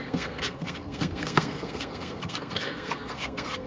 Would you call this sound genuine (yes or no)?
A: no